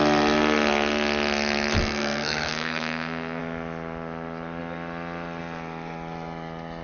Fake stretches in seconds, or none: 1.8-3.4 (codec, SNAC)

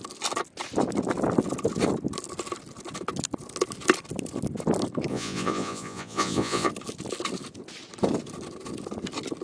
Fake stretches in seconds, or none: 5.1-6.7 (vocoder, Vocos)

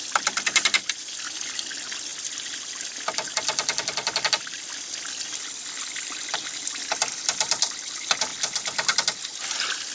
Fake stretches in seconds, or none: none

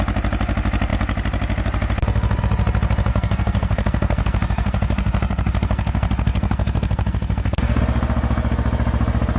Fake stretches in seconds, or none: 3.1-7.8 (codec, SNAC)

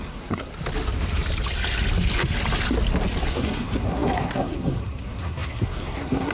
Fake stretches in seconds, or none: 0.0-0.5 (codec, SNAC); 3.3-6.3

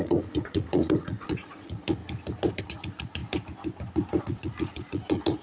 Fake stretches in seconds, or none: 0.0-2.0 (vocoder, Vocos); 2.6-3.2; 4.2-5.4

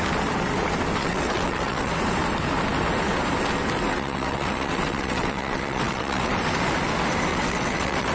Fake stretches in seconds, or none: 1.0-1.9 (vocoder, WaveNeXt); 3.9-6.3; 7.3-8.1